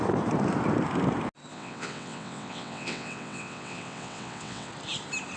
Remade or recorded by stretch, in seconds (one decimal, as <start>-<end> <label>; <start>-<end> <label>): 0.0-1.5 recorded; 1.5-4.7 remade; 4.7-5.4 recorded